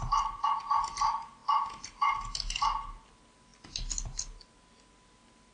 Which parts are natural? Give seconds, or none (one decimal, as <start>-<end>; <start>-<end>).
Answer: 0.0-5.5